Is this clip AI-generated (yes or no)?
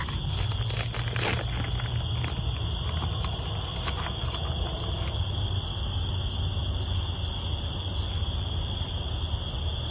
no